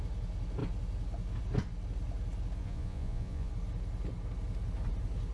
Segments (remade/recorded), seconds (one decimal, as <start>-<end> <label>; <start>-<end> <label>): 0.0-2.6 recorded; 2.6-3.5 remade; 3.5-5.3 recorded